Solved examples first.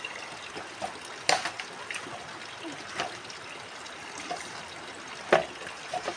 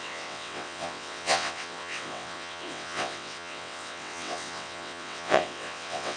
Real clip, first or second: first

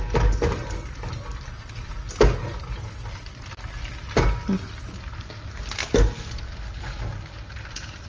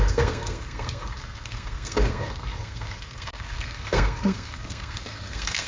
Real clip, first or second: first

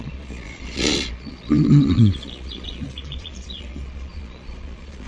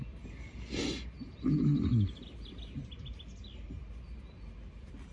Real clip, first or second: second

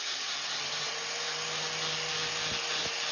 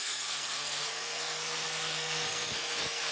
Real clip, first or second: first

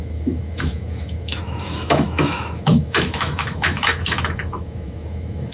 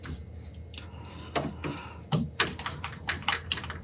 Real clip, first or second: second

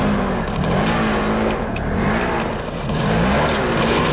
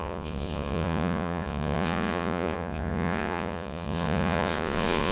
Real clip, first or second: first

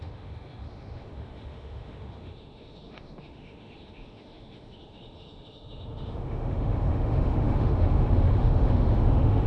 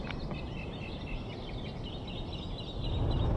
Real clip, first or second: second